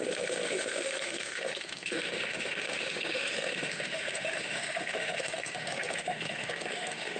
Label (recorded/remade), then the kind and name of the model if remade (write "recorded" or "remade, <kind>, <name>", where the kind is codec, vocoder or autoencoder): remade, autoencoder, DAC-VAE